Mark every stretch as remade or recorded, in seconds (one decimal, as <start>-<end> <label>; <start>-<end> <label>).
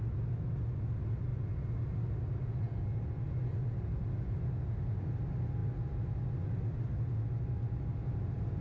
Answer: 0.0-8.6 recorded